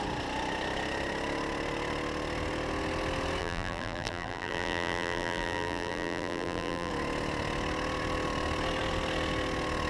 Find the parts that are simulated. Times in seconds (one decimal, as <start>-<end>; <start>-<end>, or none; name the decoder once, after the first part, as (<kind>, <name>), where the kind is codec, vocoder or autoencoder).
3.4-6.9 (vocoder, BigVGAN v2)